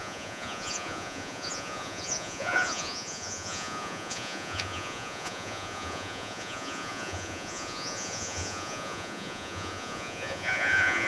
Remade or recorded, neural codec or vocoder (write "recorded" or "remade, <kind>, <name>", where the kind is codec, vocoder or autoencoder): remade, vocoder, Vocos